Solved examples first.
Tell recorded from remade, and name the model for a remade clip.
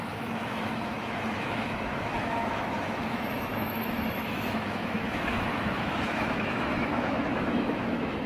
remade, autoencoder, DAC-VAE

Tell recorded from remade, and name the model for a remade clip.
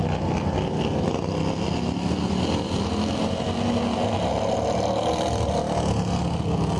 recorded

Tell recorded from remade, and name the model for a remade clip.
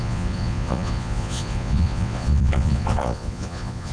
remade, vocoder, Vocos